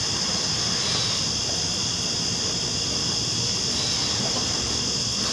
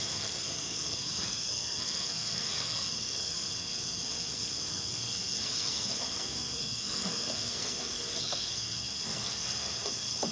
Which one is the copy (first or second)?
second